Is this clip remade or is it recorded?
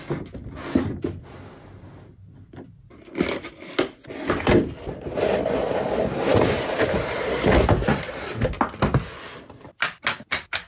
recorded